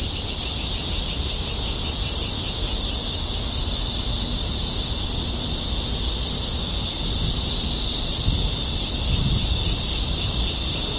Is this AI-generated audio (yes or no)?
no